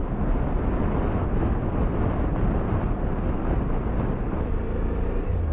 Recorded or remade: recorded